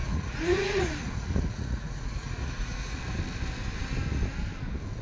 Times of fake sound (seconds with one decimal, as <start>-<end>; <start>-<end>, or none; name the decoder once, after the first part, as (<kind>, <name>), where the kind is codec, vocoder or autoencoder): 0.0-3.0 (vocoder, Vocos)